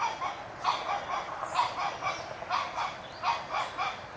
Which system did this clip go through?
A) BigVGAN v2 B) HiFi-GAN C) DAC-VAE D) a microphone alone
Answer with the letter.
D